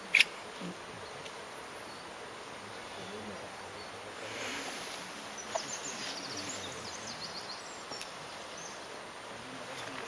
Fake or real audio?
real